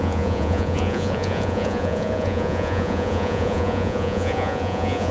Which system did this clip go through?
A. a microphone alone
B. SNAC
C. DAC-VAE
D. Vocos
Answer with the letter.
D